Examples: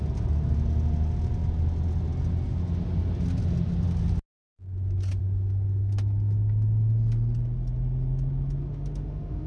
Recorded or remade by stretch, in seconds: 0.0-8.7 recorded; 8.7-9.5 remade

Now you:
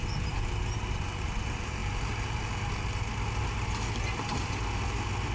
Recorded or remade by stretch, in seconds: 0.0-1.2 recorded; 1.2-5.3 remade

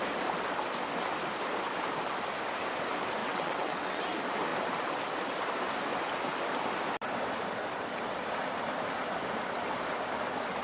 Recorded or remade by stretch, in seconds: 0.0-3.2 recorded; 3.2-4.0 remade; 4.0-10.6 recorded

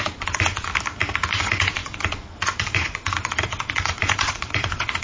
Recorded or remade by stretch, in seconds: 0.0-0.7 remade; 0.7-1.3 recorded; 1.3-5.0 remade

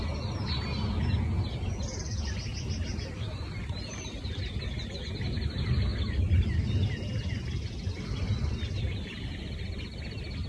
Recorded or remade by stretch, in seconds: 0.0-2.5 recorded; 2.5-4.3 remade; 4.3-10.5 recorded

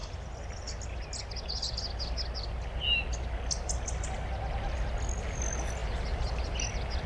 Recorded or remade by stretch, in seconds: 0.0-5.8 recorded; 5.8-6.3 remade; 6.3-7.1 recorded

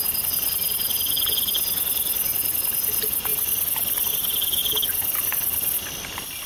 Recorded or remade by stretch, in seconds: 0.0-6.5 recorded

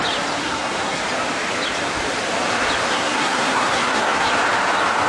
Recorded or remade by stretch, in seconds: 0.0-0.4 recorded; 0.4-1.0 remade; 1.0-2.9 recorded; 2.9-4.3 remade; 4.3-5.1 recorded